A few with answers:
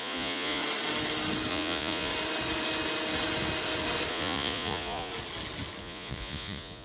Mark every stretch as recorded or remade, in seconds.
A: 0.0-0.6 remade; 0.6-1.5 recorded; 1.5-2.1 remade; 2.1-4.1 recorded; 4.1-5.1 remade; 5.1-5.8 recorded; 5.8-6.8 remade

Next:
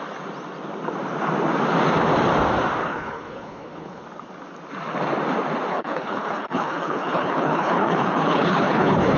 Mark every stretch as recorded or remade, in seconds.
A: 0.0-2.8 recorded; 2.8-4.0 remade; 4.0-5.7 recorded; 5.7-9.2 remade

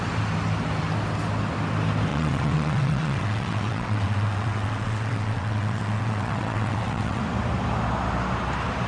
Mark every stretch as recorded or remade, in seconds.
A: 0.0-2.1 recorded; 2.1-7.2 remade; 7.2-8.9 recorded

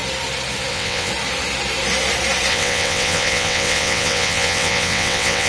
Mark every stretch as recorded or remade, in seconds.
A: 0.0-0.7 recorded; 0.7-1.1 remade; 1.1-2.5 recorded; 2.5-5.5 remade

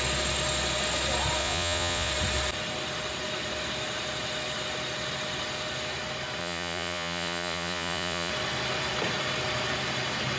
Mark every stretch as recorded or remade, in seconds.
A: 0.0-1.4 recorded; 1.4-2.1 remade; 2.1-6.4 recorded; 6.4-8.3 remade; 8.3-10.4 recorded

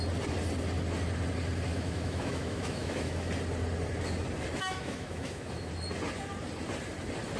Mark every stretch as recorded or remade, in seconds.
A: 0.0-1.7 recorded; 1.7-3.3 remade; 3.3-4.6 recorded; 4.6-5.7 remade; 5.7-7.4 recorded